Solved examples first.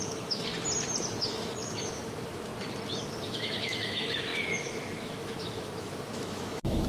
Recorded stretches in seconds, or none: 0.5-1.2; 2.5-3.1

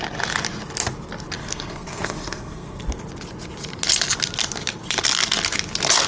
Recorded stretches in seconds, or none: 0.0-1.4; 2.8-6.1

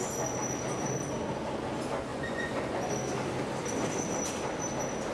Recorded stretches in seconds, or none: 0.0-2.1; 2.9-5.1

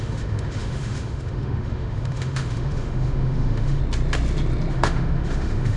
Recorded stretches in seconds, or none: 3.8-4.7

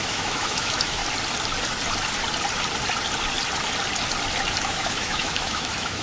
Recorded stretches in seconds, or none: 1.0-4.6

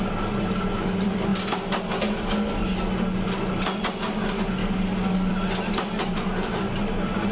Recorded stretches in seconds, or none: 0.0-4.6; 5.3-7.3